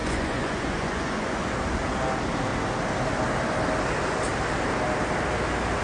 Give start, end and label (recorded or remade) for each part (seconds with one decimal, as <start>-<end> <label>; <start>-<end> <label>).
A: 0.0-1.5 remade; 1.5-5.8 recorded